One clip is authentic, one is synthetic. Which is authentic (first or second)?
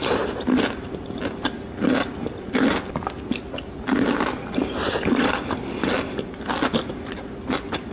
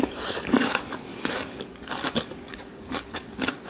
first